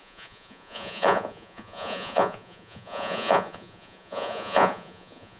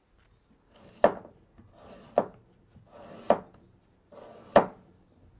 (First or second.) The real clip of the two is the second